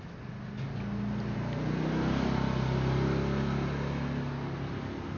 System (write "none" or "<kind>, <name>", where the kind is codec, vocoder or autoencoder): none